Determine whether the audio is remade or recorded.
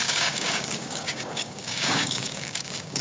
remade